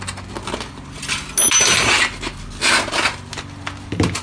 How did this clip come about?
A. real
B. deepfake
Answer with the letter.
A